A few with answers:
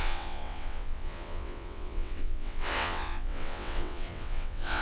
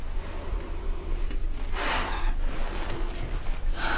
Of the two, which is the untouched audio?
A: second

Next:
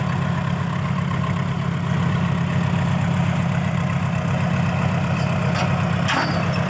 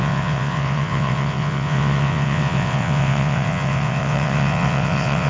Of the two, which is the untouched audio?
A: first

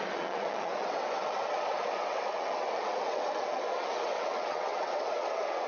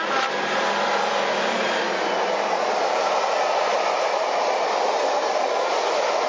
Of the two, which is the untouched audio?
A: second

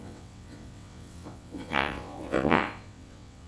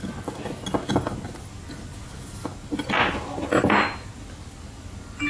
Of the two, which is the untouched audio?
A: second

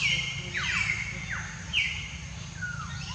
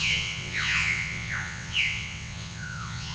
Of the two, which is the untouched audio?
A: first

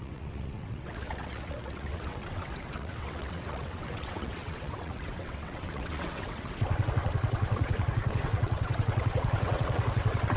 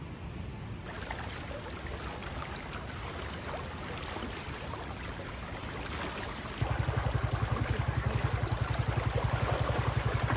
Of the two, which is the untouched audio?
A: second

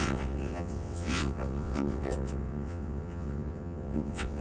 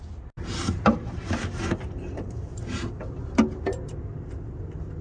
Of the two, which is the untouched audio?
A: second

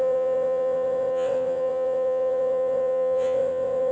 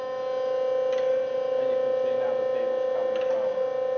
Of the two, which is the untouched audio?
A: second